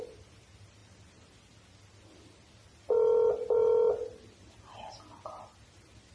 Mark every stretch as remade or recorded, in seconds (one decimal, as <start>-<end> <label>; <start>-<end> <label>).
0.0-6.1 recorded